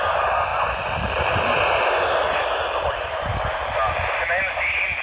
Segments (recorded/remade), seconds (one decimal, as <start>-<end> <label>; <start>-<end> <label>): 0.0-5.0 recorded